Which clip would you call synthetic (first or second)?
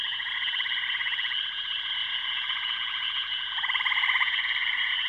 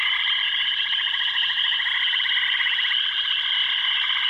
first